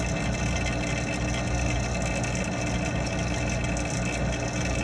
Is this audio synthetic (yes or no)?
no